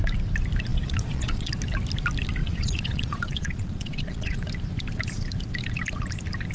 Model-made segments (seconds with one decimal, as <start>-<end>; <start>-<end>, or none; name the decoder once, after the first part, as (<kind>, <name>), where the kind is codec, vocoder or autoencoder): 0.7-1.5 (vocoder, Vocos); 2.4-4.4